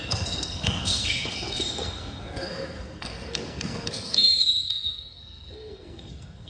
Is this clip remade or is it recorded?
remade